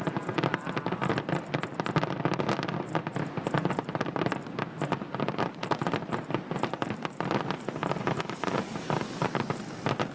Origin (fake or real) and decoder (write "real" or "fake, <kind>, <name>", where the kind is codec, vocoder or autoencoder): real